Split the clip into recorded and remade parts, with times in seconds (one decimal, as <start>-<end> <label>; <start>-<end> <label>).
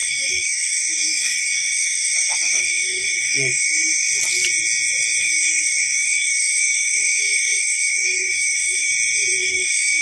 0.0-4.1 remade; 4.1-5.2 recorded; 5.2-8.9 remade; 8.9-9.4 recorded; 9.4-10.0 remade